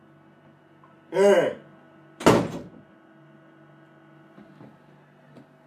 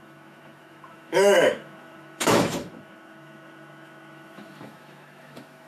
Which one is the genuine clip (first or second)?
first